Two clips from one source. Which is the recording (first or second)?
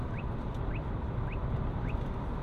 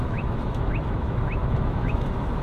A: first